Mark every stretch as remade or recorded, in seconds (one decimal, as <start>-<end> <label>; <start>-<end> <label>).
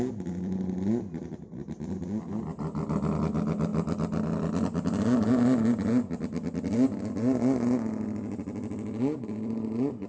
0.0-10.1 recorded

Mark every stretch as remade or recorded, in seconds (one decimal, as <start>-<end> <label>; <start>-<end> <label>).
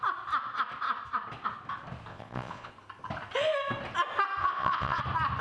0.0-2.1 recorded; 2.1-2.7 remade; 2.7-4.4 recorded; 4.4-5.0 remade; 5.0-5.4 recorded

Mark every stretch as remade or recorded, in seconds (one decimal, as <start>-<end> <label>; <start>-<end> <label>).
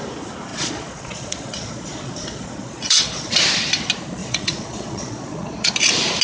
0.0-0.5 recorded; 0.5-3.3 remade; 3.3-4.2 recorded; 4.2-5.7 remade; 5.7-6.2 recorded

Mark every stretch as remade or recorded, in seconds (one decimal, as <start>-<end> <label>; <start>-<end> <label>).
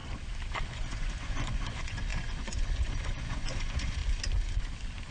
0.0-0.7 recorded; 0.7-4.0 remade; 4.0-5.1 recorded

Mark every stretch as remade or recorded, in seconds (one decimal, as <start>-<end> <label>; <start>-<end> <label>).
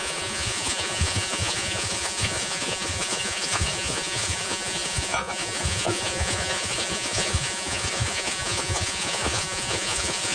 0.0-10.3 remade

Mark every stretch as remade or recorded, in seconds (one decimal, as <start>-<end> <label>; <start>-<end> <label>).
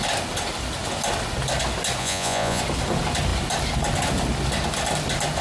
0.0-2.0 recorded; 2.0-2.6 remade; 2.6-5.4 recorded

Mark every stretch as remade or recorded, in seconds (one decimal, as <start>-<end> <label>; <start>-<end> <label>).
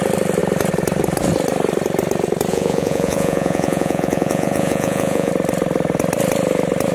0.0-2.5 recorded; 2.5-5.3 remade; 5.3-6.9 recorded